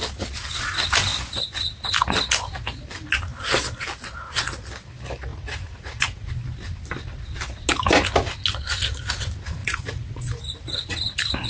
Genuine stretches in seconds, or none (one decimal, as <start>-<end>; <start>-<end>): 0.0-5.3; 6.3-9.6; 10.4-11.5